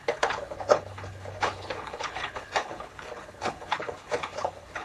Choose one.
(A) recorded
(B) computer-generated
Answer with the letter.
B